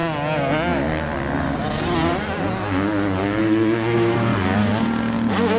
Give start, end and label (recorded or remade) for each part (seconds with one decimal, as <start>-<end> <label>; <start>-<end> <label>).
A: 0.0-3.4 recorded; 3.4-4.3 remade; 4.3-5.6 recorded